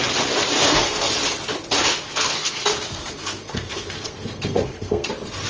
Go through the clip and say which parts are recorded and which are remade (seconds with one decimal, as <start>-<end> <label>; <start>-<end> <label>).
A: 0.0-0.6 recorded; 0.6-1.1 remade; 1.1-1.9 recorded; 1.9-5.1 remade; 5.1-5.5 recorded